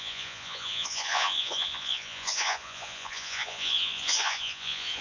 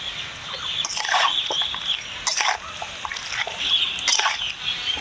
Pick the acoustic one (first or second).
second